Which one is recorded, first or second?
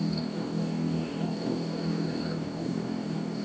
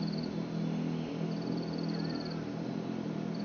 second